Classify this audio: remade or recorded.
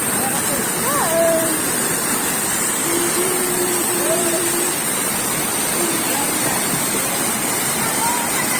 remade